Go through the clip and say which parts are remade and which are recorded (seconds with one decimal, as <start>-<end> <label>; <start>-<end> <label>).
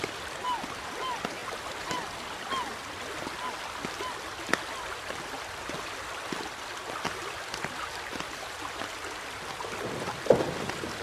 0.0-1.4 recorded; 1.4-3.5 remade; 3.5-11.0 recorded